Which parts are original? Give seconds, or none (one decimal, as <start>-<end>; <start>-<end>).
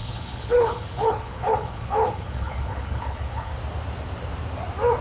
3.5-5.0